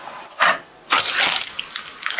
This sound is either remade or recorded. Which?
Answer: recorded